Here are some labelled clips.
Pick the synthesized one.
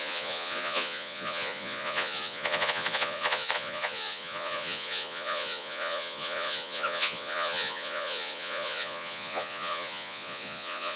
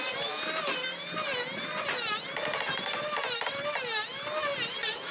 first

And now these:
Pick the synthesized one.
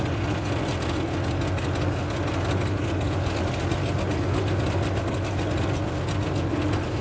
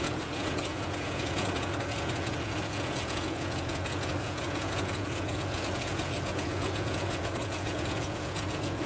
second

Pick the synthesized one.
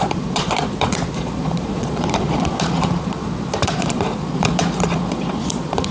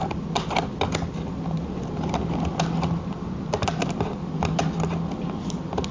first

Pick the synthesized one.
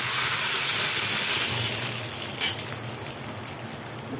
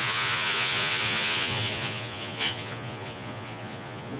second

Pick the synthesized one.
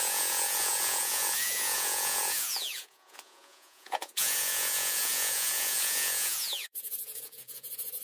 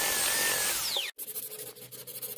first